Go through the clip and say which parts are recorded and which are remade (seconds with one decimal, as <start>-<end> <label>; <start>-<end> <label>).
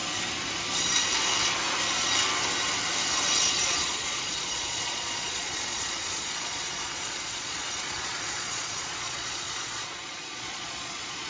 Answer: 0.0-3.5 recorded; 3.5-11.3 remade